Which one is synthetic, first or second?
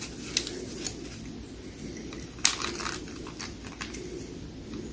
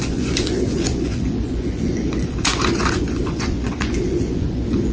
second